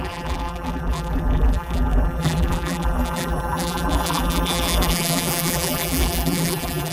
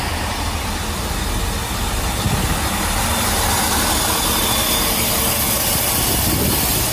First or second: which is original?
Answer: second